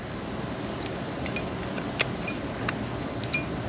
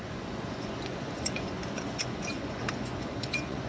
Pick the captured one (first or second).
first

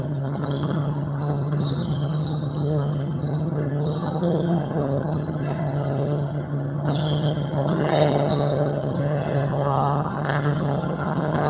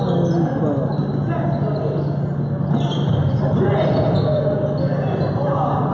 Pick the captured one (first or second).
second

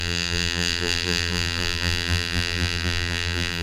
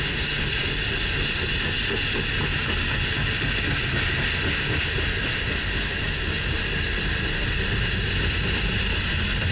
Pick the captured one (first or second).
second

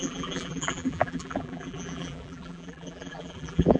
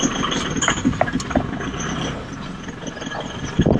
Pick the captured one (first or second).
second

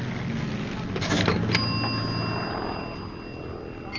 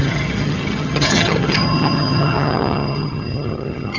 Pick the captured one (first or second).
first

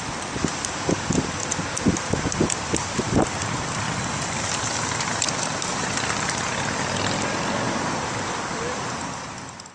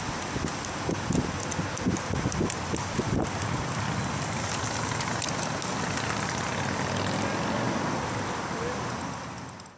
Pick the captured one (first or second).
second